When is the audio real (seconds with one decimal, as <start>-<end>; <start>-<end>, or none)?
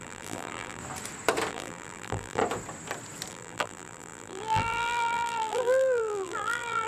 0.8-1.5; 2.4-3.3